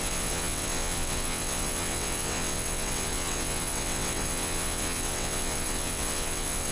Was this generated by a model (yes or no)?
yes